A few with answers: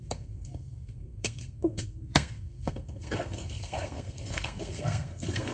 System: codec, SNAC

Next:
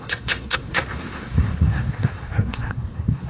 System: codec, SNAC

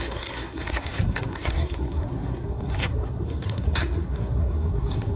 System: codec, SNAC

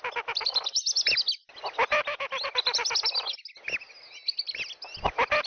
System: none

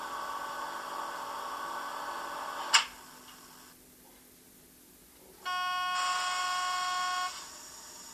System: none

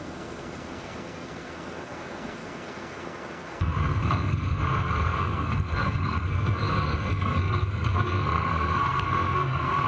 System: codec, SNAC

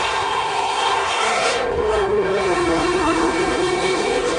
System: codec, SNAC